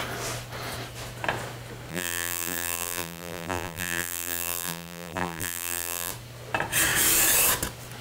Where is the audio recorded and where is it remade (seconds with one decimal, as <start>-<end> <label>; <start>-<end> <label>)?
0.0-1.9 recorded; 1.9-6.1 remade; 6.1-8.0 recorded